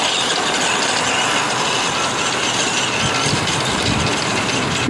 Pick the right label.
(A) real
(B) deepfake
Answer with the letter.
A